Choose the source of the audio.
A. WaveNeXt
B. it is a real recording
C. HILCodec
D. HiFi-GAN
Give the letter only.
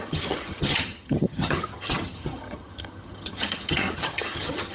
D